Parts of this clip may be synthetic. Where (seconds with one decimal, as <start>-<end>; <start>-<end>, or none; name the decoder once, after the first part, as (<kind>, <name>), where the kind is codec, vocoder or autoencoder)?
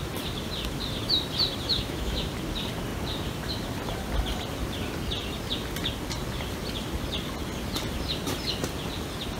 1.7-2.3 (autoencoder, DAC-VAE)